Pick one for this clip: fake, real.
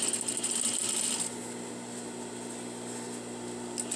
real